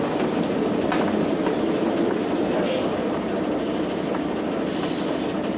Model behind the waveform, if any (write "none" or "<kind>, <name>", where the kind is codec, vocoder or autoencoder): none